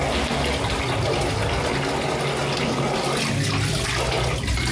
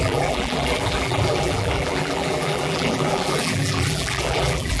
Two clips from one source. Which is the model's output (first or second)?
second